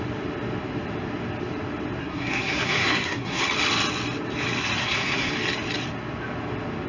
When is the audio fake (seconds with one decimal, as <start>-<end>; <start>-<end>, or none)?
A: 2.0-3.4; 4.8-5.3

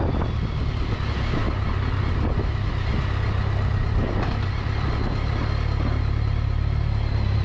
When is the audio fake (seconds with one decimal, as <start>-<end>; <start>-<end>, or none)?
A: none

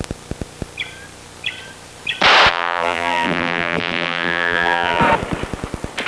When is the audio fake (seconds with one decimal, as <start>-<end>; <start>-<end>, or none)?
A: 2.5-5.0